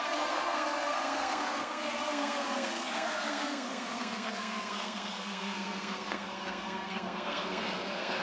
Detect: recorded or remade remade